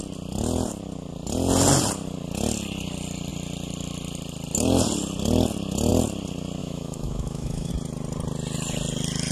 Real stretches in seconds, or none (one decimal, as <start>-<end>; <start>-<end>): 0.0-6.6; 7.7-9.3